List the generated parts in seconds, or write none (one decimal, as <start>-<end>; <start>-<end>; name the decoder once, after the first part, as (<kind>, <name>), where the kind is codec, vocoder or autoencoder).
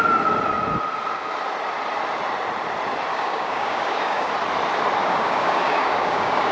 3.1-4.3 (codec, DAC); 5.0-6.5